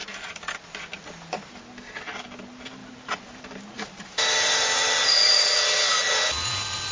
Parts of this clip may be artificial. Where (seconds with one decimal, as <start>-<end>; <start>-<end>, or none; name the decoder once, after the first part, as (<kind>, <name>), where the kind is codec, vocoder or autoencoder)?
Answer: 2.8-5.6 (vocoder, BigVGAN v2)